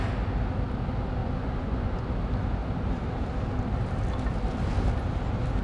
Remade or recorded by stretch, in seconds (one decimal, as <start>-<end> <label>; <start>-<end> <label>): 0.0-1.2 recorded; 1.2-2.0 remade; 2.0-5.6 recorded